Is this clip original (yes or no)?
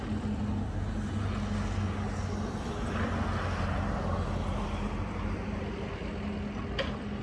yes